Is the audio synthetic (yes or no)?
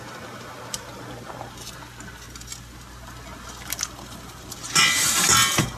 no